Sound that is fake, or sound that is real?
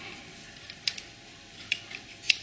real